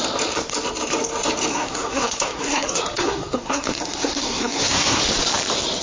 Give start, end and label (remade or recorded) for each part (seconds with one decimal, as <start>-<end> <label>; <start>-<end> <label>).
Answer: 0.0-1.5 recorded; 1.5-5.0 remade; 5.0-5.8 recorded